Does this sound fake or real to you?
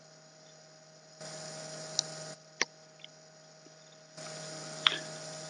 real